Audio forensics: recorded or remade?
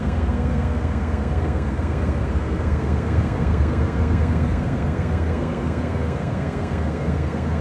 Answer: remade